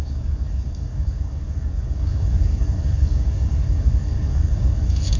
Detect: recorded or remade remade